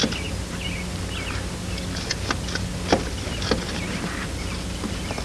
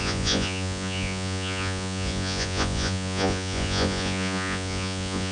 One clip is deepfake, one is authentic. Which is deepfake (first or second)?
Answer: second